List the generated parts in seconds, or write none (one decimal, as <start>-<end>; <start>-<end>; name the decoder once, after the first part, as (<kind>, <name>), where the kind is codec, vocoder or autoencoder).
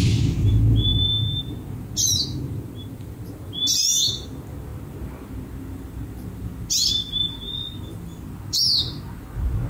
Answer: none